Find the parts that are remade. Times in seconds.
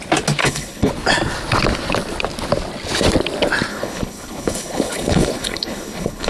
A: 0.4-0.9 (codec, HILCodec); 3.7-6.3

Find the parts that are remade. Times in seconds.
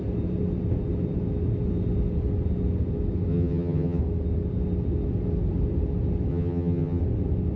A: 3.3-4.0 (vocoder, HiFi-GAN); 6.3-7.0